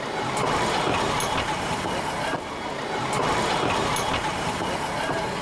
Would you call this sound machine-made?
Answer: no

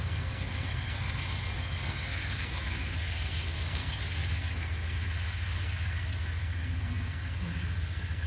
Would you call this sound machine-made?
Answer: yes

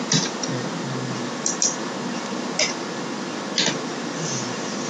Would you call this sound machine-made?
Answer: no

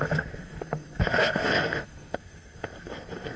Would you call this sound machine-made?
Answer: yes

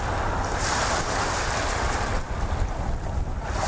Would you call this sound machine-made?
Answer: no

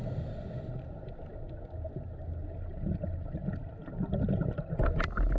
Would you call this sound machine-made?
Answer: no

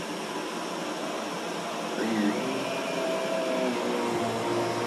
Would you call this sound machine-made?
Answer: no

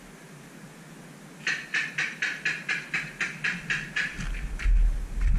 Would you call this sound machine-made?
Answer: no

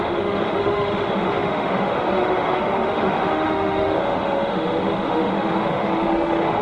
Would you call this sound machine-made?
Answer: yes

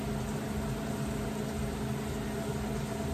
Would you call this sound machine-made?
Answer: no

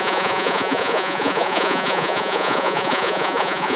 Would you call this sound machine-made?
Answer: yes